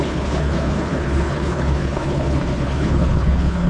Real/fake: fake